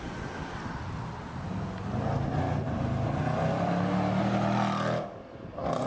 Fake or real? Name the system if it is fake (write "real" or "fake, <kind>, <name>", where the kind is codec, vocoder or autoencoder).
real